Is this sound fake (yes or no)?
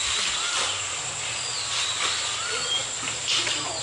no